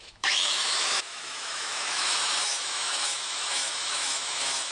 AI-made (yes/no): yes